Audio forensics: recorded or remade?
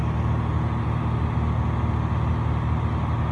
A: recorded